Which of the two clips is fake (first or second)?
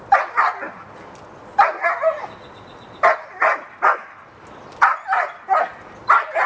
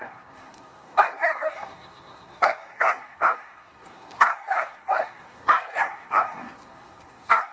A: second